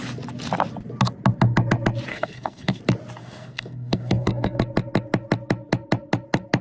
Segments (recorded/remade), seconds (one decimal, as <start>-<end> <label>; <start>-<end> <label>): 0.0-2.1 recorded; 2.1-2.8 remade; 2.8-3.2 recorded; 3.2-4.6 remade; 4.6-6.6 recorded